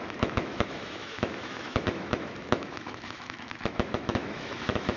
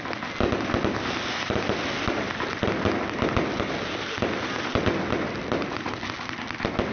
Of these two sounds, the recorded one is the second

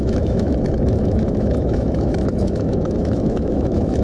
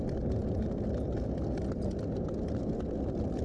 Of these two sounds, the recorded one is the second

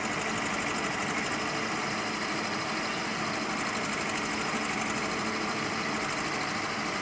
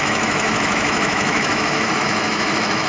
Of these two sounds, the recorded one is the first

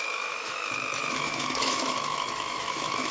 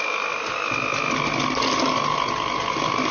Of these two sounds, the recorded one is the second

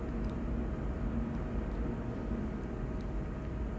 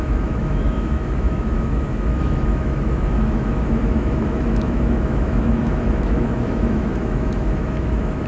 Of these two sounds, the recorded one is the first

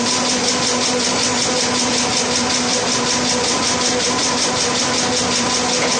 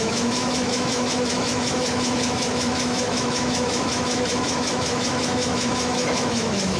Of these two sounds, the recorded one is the first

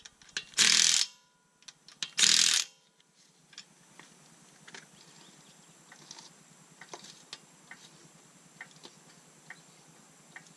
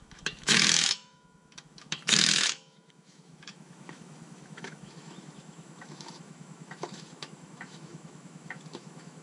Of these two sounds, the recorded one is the first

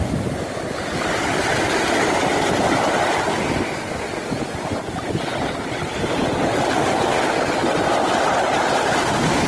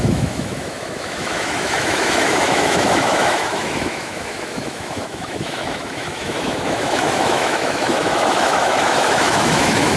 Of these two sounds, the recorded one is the first